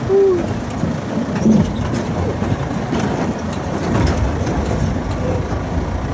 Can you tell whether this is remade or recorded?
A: recorded